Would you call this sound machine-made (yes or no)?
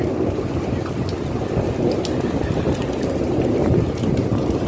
no